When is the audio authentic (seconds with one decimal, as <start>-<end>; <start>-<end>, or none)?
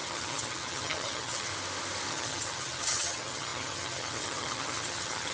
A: 1.5-2.1